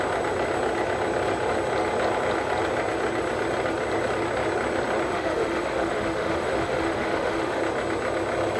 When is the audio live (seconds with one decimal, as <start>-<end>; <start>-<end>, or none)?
0.0-5.1; 7.6-8.6